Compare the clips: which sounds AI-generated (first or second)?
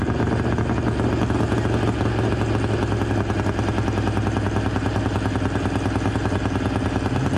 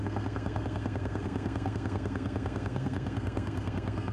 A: second